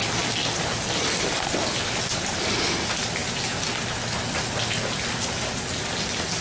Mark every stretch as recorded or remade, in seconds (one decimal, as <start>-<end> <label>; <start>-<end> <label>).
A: 0.0-6.4 recorded